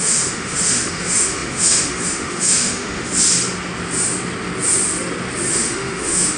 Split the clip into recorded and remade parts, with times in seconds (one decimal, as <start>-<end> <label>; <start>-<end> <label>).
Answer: 0.0-3.1 remade; 3.1-5.5 recorded; 5.5-6.4 remade